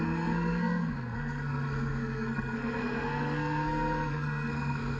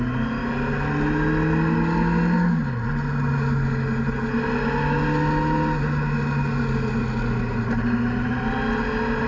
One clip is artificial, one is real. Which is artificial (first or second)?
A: first